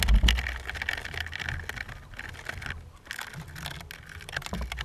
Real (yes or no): yes